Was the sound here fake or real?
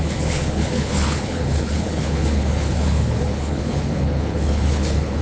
fake